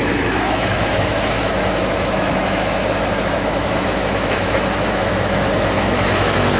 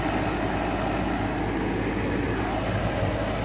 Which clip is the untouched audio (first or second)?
second